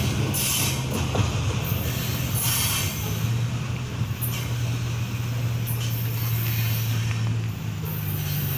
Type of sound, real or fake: real